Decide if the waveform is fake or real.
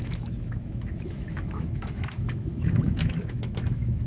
fake